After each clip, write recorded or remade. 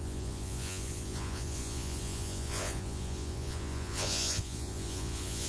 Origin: remade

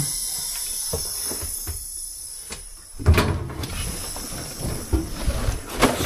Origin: recorded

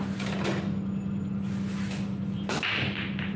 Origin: recorded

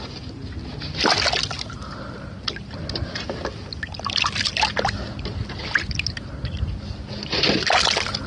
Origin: recorded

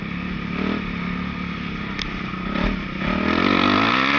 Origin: recorded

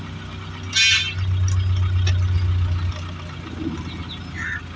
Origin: recorded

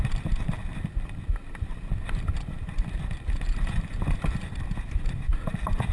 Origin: recorded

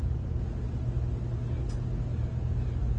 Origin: recorded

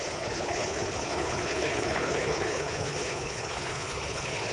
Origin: remade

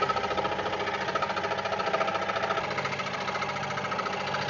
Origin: recorded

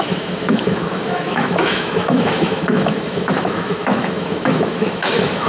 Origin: remade